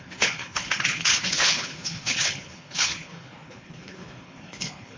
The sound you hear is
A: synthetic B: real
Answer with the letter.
A